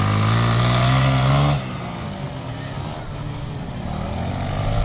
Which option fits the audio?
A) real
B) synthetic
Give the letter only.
A